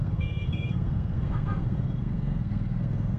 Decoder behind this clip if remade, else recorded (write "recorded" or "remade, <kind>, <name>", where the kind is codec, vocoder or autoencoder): remade, codec, SNAC